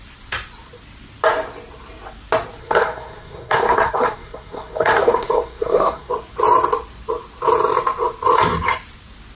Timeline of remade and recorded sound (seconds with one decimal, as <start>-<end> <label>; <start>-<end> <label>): 0.0-2.6 recorded; 2.6-6.1 remade; 6.1-9.3 recorded